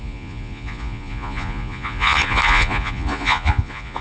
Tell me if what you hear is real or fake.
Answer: fake